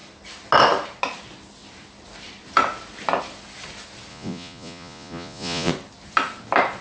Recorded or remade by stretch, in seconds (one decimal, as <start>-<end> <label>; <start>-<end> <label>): 0.0-4.1 recorded; 4.1-5.7 remade; 5.7-6.8 recorded

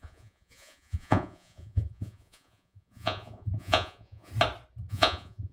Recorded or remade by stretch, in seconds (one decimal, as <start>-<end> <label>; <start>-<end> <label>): 0.0-4.3 remade; 4.3-4.9 recorded; 4.9-5.5 remade